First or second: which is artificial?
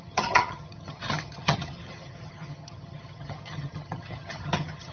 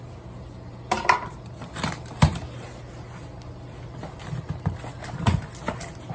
first